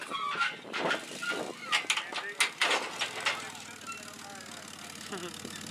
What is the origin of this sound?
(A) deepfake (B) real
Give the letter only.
B